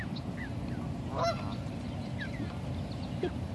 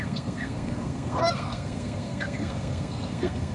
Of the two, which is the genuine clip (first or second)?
first